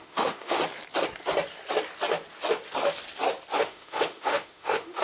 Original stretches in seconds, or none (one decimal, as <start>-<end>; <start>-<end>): 0.6-3.6